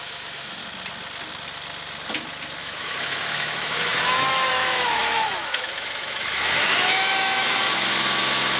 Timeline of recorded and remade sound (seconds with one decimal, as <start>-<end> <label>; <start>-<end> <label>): 0.0-0.6 remade; 0.6-2.6 recorded; 2.6-8.6 remade